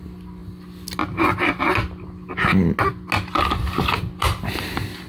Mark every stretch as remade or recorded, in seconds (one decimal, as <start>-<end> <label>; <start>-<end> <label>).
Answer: 0.0-5.1 recorded